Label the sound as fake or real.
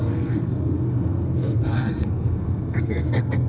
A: fake